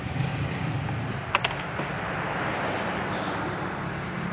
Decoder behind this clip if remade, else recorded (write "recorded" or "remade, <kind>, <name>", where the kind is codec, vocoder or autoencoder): recorded